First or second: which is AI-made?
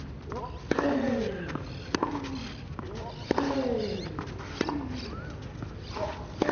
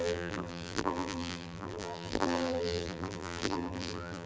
second